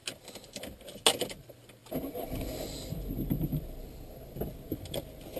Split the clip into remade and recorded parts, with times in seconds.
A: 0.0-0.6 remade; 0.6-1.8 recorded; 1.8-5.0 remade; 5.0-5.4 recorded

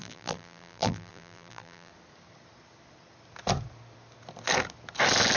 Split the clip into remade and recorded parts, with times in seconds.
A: 0.0-1.9 remade; 1.9-5.4 recorded

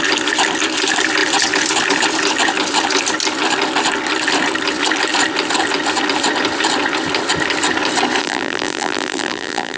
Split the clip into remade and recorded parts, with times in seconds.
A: 0.0-8.2 recorded; 8.2-9.8 remade

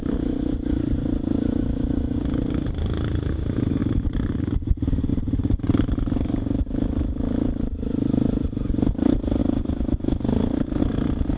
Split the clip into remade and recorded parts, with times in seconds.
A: 0.0-3.8 recorded; 3.8-4.4 remade; 4.4-5.1 recorded; 5.1-7.0 remade; 7.0-11.4 recorded

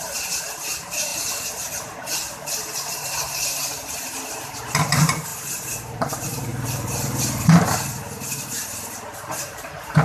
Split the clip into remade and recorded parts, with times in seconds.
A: 0.0-6.5 remade; 6.5-8.8 recorded; 8.8-10.0 remade

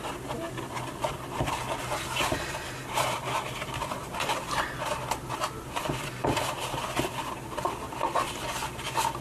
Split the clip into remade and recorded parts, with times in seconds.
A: 0.0-9.2 recorded

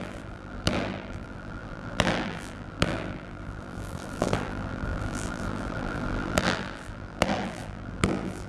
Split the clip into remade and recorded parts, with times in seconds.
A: 0.0-8.5 remade